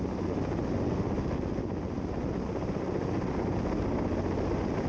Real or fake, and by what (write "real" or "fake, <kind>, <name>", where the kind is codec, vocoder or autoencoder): real